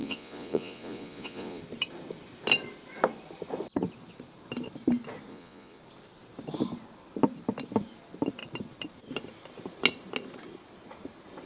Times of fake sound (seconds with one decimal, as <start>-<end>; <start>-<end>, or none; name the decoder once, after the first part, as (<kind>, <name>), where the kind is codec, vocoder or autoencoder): 0.0-1.6 (vocoder, Vocos); 5.3-5.8